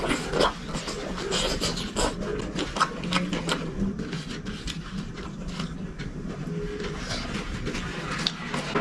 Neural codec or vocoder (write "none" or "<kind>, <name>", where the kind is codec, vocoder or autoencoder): none